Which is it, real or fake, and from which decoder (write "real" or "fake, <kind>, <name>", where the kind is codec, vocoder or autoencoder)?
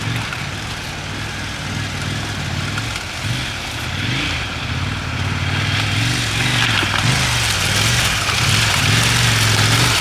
real